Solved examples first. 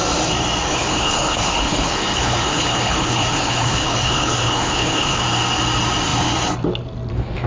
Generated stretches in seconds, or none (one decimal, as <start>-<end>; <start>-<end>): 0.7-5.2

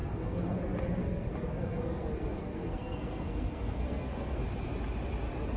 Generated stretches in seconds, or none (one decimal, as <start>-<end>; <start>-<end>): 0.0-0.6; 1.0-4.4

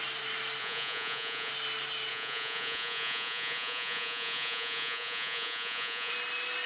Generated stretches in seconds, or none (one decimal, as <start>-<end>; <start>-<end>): 0.6-1.5; 2.1-6.1